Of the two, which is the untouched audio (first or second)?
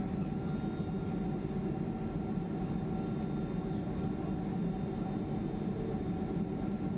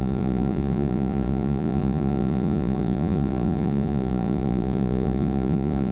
first